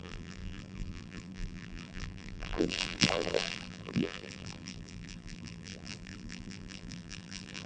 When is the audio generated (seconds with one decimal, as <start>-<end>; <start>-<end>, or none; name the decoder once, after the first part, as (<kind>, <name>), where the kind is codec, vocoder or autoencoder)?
0.0-7.7 (vocoder, BigVGAN v2)